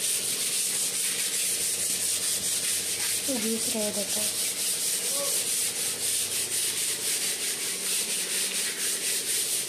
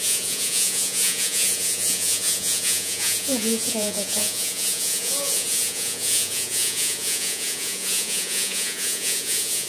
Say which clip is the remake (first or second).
second